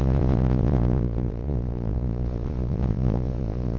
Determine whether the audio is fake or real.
fake